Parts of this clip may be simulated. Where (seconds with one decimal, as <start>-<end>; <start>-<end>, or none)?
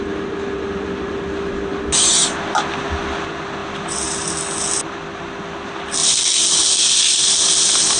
none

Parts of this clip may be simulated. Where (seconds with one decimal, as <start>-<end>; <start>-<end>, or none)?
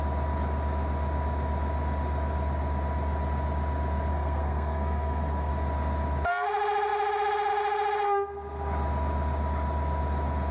4.1-5.5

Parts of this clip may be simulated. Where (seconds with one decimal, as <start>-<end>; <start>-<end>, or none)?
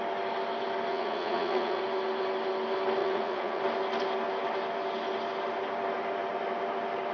0.9-1.8; 3.0-3.6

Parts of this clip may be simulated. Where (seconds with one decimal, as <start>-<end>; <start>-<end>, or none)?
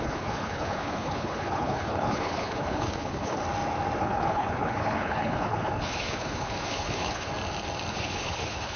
0.0-3.4; 4.0-7.3; 7.9-8.8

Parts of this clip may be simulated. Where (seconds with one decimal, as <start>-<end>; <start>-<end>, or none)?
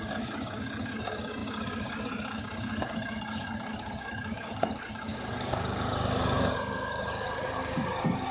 0.0-8.3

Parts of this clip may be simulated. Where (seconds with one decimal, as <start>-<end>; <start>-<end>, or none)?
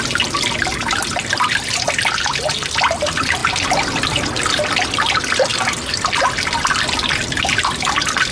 none